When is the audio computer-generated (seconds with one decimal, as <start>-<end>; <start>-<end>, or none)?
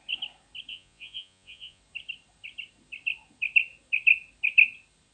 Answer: 0.7-1.8